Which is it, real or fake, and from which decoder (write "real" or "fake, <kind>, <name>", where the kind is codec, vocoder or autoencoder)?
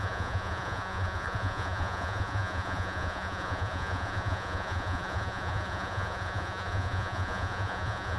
fake, vocoder, Vocos